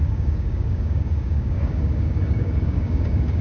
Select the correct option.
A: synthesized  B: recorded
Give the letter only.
A